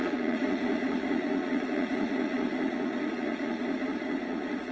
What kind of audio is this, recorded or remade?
remade